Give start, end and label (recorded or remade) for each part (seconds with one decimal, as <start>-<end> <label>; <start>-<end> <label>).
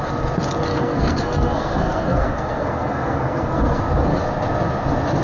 0.0-0.7 recorded; 0.7-3.8 remade; 3.8-5.2 recorded